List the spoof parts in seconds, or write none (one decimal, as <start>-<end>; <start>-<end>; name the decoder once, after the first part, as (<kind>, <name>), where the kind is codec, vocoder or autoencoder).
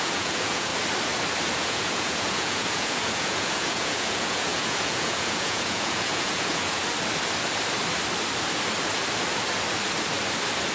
0.0-0.7 (vocoder, Vocos); 1.5-6.8